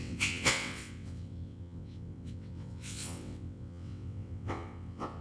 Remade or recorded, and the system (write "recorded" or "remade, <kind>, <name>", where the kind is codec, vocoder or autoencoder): remade, vocoder, WaveNeXt